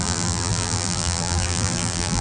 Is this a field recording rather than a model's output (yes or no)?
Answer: no